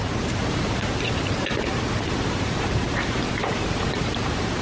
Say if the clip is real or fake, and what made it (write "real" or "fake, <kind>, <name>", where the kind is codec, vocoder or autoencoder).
fake, vocoder, BigVGAN v2